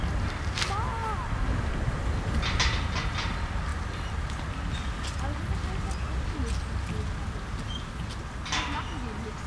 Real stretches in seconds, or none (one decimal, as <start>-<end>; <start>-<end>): 0.0-9.5